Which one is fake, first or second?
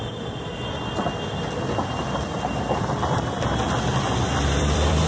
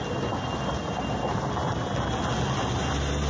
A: first